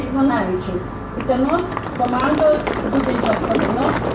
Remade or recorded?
recorded